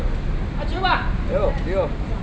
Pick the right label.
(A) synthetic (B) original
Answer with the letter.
B